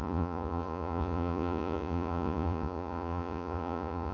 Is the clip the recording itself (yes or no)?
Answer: no